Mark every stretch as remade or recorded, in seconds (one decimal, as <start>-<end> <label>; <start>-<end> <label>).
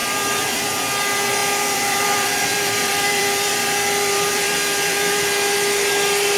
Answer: 0.0-0.9 remade; 0.9-1.4 recorded; 1.4-5.2 remade; 5.2-6.4 recorded